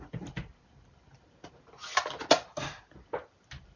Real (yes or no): yes